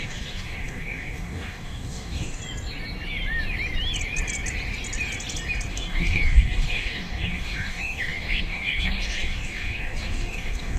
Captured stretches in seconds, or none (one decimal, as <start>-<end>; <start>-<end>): 2.4-5.7